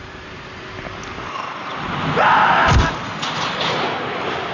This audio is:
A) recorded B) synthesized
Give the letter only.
A